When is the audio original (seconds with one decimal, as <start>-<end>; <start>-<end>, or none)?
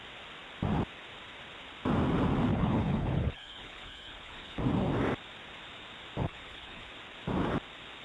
0.0-2.5; 4.6-6.2; 6.9-8.0